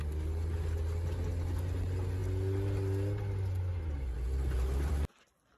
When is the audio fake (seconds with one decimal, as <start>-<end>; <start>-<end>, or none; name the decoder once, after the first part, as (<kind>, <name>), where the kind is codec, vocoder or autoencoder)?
none